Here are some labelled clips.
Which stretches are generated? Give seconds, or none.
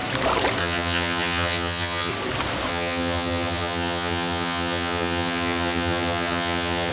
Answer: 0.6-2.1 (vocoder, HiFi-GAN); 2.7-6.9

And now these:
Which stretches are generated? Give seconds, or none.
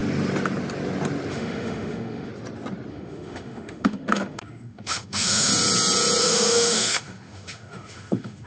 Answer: 1.3-2.3 (autoencoder, DAC-VAE); 2.9-5.5; 6.2-8.5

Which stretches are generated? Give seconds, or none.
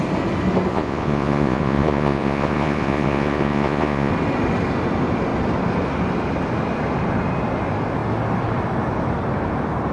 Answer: 0.7-4.1 (vocoder, Vocos)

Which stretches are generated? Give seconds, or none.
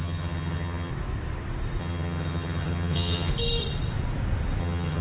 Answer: 0.0-0.9 (vocoder, HiFi-GAN); 1.8-3.3; 4.6-5.0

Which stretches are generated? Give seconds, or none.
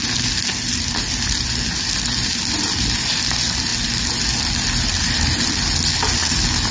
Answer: none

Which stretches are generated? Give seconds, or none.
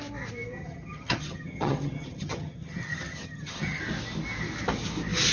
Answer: 0.6-3.8 (vocoder, HiFi-GAN)